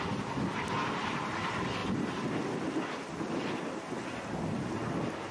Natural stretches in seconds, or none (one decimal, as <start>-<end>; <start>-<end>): 0.0-5.3